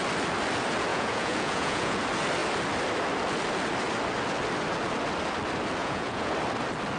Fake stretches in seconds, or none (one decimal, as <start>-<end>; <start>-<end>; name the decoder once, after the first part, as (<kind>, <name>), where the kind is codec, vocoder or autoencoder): 0.9-2.0 (vocoder, Vocos); 5.8-6.3